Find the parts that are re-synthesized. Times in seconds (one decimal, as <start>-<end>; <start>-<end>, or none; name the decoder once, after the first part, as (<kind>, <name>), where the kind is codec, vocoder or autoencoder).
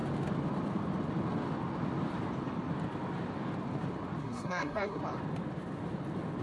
4.2-5.0 (codec, SNAC)